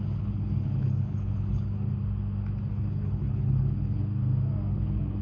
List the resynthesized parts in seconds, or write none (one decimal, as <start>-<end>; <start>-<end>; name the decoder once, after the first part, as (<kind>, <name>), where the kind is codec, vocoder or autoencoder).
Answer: 0.0-1.9 (codec, HILCodec); 2.7-4.1; 4.7-5.2